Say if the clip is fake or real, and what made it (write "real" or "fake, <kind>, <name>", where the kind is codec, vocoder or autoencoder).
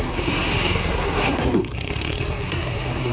fake, codec, SNAC